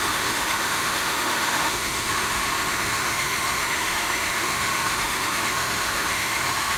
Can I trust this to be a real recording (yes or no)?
no